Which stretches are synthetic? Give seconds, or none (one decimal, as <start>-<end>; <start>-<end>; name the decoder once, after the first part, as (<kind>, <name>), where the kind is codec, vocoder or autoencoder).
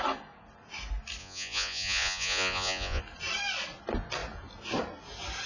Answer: 1.2-3.0 (vocoder, Vocos)